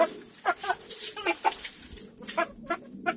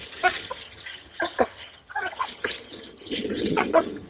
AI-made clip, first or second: second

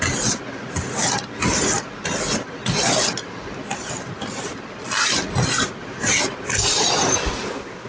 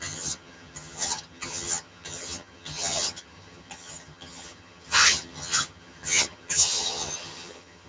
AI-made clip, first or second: second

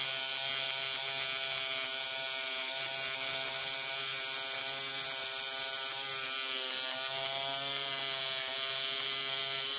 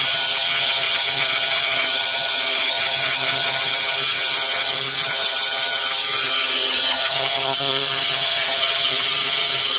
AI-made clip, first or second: second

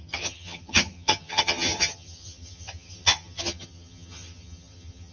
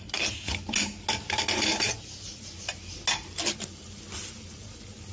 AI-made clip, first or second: first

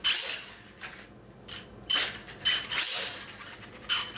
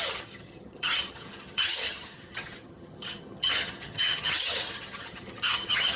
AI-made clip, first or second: second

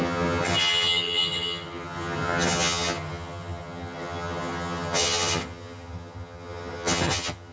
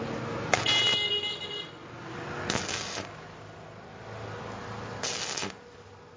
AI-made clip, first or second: first